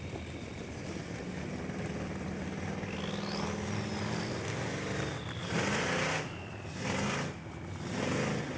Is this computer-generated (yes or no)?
no